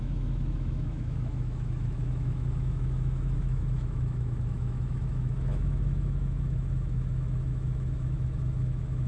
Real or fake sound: fake